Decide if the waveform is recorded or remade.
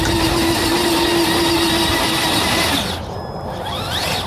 recorded